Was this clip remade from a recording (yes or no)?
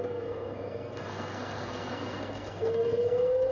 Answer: yes